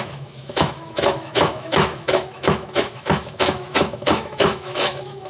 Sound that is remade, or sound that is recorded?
remade